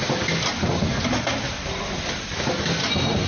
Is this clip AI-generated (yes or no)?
no